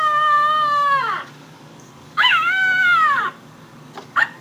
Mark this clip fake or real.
fake